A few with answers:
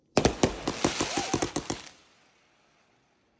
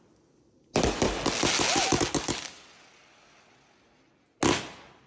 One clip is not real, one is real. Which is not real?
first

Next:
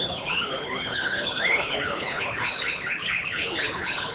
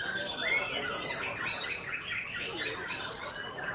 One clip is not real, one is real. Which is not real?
first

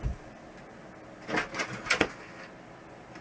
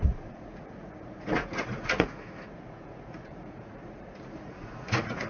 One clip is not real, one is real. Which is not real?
second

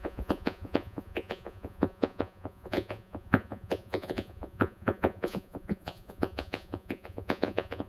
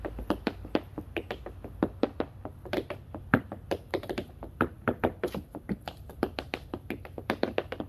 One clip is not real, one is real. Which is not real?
first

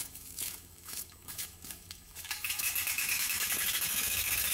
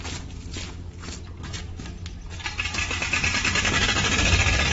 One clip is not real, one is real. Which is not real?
first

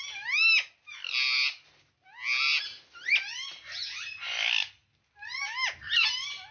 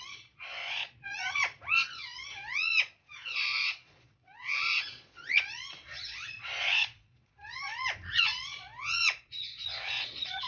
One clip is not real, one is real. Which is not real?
second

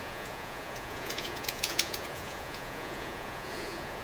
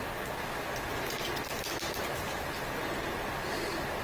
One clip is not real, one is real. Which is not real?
first